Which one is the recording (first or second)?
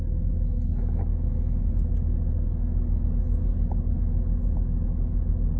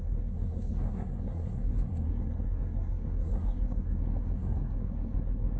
first